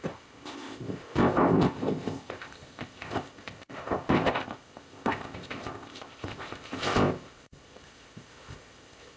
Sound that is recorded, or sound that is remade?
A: remade